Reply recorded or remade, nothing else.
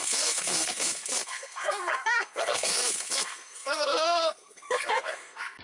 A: remade